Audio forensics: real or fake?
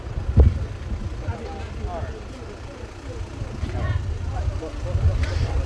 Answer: real